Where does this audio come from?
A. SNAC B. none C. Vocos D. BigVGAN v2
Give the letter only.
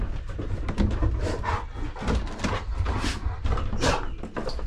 B